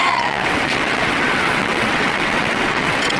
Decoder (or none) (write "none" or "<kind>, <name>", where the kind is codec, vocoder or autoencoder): vocoder, WaveNeXt